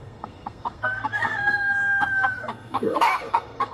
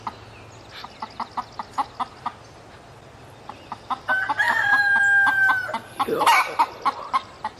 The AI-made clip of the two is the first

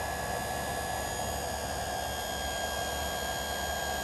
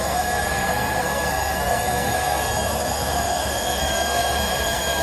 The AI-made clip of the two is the second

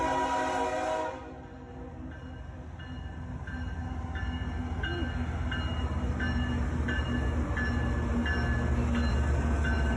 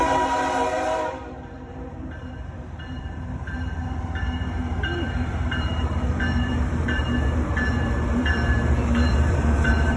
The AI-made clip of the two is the second